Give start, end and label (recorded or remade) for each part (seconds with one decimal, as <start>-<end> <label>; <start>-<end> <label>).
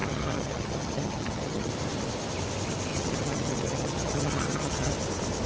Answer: 0.0-1.7 remade; 1.7-2.9 recorded; 2.9-4.9 remade; 4.9-5.5 recorded